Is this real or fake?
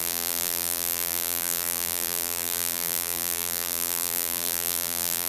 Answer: fake